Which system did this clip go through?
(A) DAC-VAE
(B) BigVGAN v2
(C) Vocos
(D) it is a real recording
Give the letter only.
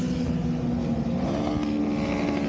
D